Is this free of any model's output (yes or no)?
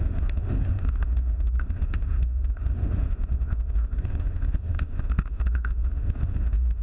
no